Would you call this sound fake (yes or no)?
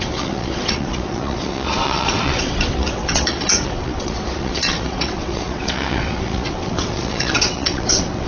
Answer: yes